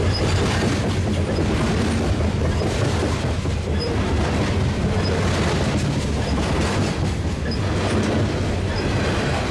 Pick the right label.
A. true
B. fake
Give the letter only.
A